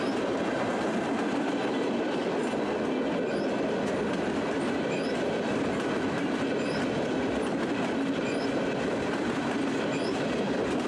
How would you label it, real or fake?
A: real